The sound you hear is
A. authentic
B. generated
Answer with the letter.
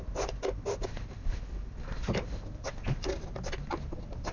A